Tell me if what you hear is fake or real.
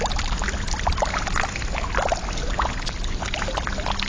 real